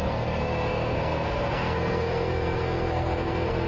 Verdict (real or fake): fake